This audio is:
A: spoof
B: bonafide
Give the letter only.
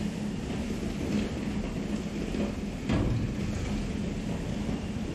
B